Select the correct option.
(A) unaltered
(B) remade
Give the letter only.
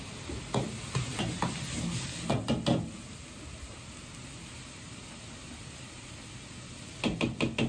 A